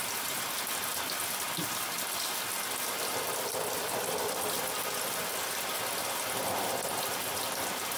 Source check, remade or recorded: recorded